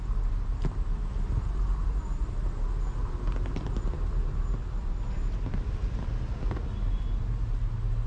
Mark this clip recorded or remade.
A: recorded